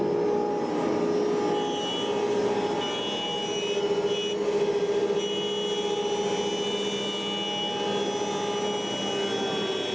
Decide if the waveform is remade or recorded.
recorded